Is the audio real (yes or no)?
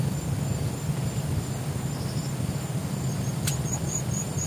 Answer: yes